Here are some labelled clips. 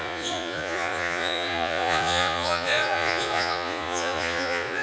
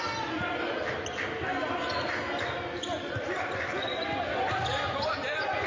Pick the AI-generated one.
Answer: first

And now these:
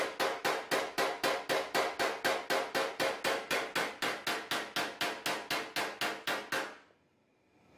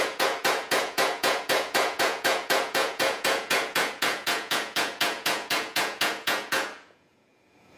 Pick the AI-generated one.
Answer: second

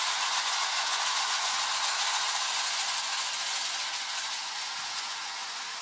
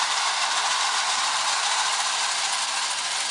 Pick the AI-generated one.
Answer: first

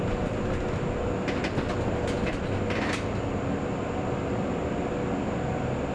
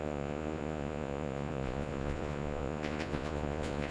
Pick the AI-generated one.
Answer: second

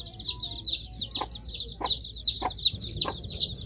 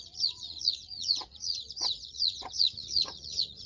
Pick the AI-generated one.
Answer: second